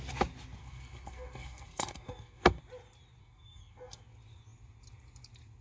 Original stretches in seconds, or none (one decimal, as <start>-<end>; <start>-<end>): 0.0-0.6; 2.6-3.2; 4.0-5.6